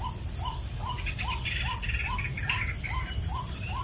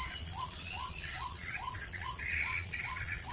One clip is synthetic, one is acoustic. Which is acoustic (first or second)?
first